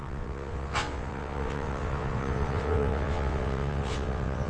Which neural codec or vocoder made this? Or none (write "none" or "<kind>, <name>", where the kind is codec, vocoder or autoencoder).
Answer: vocoder, WaveNeXt